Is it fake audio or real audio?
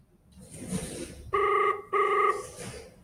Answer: real